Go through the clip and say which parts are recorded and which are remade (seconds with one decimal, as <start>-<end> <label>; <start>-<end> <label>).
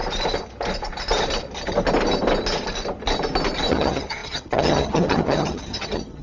0.0-3.7 recorded; 3.7-6.2 remade